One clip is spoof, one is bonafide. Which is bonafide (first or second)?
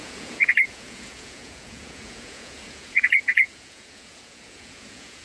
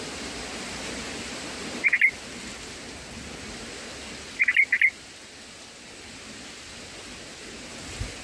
second